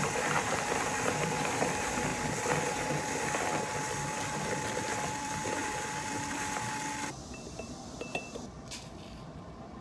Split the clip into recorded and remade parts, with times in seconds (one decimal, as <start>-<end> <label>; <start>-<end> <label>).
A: 0.0-9.8 remade

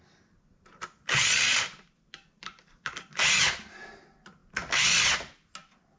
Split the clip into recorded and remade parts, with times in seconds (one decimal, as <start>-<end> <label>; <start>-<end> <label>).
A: 0.0-1.5 recorded; 1.5-3.1 remade; 3.1-6.0 recorded